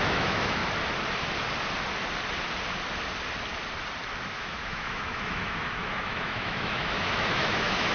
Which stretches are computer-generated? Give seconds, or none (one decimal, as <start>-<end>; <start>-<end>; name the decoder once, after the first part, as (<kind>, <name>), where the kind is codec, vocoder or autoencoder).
0.0-0.6 (autoencoder, DAC-VAE); 4.3-7.9